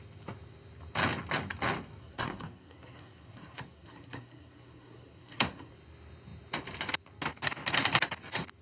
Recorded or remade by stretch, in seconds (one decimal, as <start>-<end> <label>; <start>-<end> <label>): 0.0-2.0 recorded; 2.0-5.7 remade; 5.7-8.6 recorded